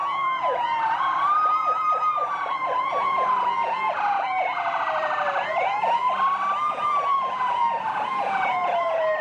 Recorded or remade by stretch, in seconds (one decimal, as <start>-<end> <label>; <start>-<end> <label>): 0.0-6.0 remade; 6.0-6.6 recorded; 6.6-9.2 remade